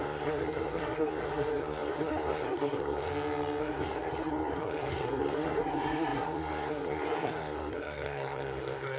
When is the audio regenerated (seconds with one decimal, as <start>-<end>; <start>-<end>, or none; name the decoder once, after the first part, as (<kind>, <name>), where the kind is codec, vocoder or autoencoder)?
0.0-3.1 (codec, SNAC); 3.6-9.0